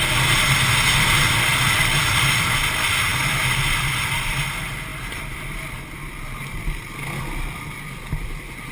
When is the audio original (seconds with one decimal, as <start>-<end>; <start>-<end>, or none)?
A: 0.0-8.7